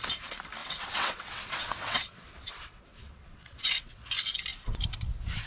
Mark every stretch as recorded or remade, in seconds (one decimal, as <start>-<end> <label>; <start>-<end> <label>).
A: 0.0-0.6 recorded; 0.6-3.9 remade; 3.9-5.5 recorded